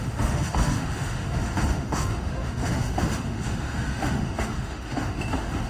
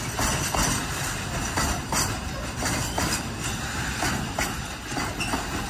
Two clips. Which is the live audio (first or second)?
second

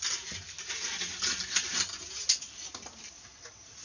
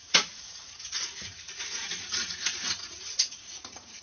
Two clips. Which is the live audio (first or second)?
first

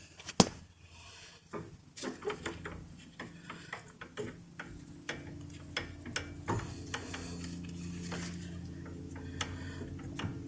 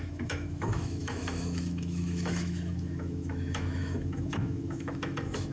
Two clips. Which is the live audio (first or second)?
first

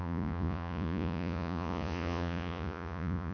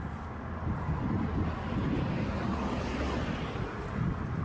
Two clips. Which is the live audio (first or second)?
second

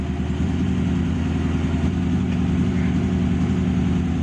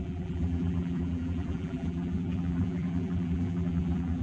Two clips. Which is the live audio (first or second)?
first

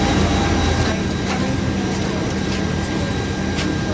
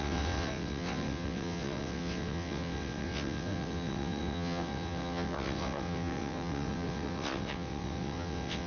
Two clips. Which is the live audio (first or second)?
first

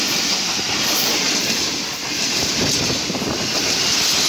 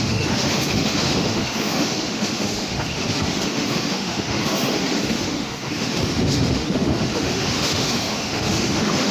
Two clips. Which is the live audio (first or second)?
first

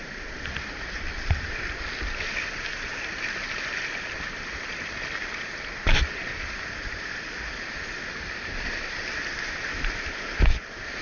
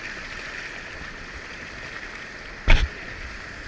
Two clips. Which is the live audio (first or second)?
second